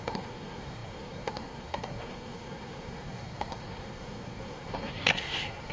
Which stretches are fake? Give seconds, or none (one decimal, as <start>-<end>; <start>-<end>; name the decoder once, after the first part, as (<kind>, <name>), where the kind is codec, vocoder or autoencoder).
0.0-5.7 (codec, SNAC)

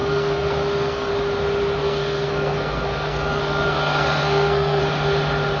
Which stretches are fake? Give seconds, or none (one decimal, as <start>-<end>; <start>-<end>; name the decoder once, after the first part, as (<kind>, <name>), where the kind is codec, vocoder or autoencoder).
0.0-1.1 (codec, SNAC); 1.8-4.8

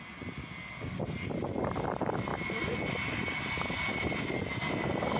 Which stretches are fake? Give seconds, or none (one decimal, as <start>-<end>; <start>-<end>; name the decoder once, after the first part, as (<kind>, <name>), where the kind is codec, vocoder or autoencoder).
none

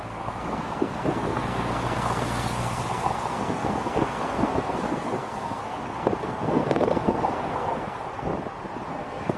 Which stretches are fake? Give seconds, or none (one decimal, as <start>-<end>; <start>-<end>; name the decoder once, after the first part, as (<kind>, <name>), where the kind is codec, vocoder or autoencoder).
0.0-8.3 (codec, SNAC); 8.9-9.4

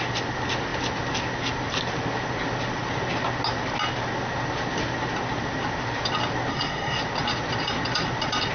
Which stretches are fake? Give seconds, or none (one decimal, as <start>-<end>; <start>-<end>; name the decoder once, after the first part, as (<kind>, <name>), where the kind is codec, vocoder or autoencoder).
6.5-7.0 (codec, SNAC)

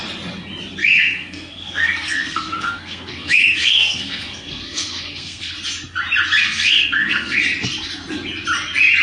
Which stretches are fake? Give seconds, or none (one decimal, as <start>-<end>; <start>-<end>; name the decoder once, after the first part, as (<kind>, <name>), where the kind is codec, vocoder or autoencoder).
0.8-5.5 (codec, SNAC); 6.4-7.4

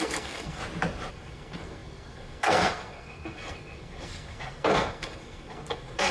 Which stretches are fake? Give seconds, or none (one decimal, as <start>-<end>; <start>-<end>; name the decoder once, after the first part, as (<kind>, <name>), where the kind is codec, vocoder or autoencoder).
0.0-0.6 (codec, SNAC); 1.1-6.1